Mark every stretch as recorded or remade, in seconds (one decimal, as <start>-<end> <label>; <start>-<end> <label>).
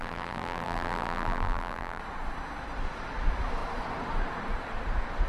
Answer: 0.0-2.0 remade; 2.0-5.3 recorded